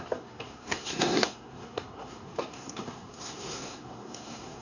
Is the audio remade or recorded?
remade